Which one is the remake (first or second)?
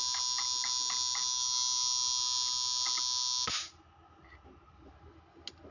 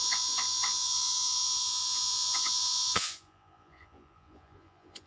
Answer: second